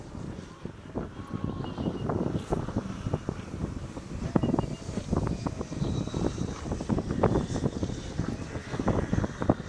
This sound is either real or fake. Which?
real